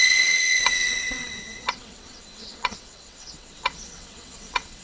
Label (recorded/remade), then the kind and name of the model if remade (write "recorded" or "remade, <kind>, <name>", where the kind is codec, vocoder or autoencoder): remade, vocoder, WaveNeXt